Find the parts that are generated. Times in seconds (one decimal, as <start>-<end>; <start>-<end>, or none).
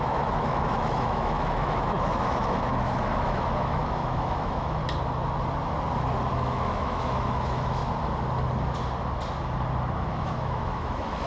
0.0-4.8; 6.3-7.8; 10.1-11.3